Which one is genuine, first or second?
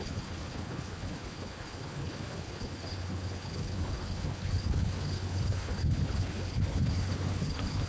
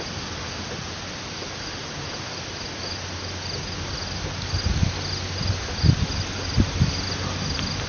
second